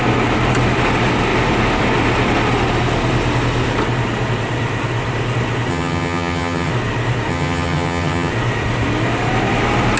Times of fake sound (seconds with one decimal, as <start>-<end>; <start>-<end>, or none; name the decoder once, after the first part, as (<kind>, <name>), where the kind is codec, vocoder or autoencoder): 5.7-6.7 (vocoder, HiFi-GAN); 7.3-8.3